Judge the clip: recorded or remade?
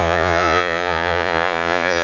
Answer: remade